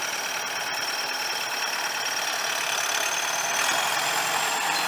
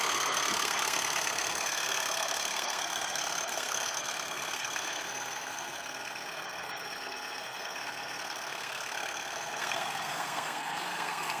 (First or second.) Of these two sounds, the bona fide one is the first